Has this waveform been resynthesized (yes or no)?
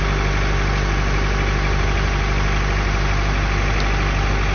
no